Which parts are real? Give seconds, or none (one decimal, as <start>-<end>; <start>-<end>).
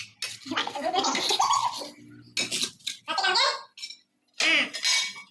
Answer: 0.0-0.6; 1.2-5.3